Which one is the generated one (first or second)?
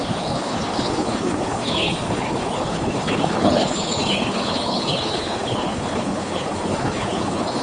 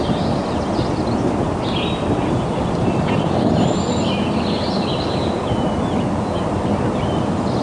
first